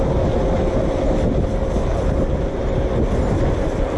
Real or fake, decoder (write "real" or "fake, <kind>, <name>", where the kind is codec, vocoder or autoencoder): real